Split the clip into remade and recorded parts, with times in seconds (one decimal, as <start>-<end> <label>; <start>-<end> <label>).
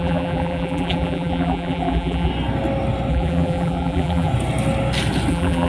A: 0.0-2.3 remade; 2.3-3.1 recorded; 3.1-4.3 remade; 4.3-5.3 recorded; 5.3-5.7 remade